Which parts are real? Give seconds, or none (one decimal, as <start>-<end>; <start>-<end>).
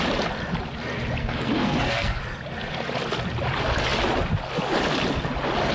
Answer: 0.0-1.2; 2.2-5.7